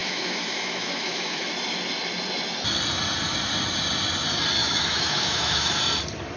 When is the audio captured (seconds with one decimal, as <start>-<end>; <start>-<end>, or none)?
1.5-4.6; 5.8-6.4